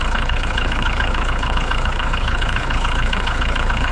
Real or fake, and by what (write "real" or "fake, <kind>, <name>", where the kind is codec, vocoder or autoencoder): fake, codec, HILCodec